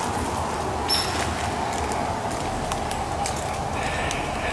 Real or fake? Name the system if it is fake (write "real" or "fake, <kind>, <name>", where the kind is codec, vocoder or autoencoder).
real